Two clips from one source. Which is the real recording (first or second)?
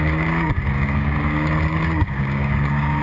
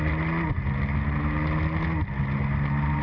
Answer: second